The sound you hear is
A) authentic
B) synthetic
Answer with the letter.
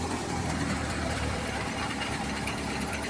B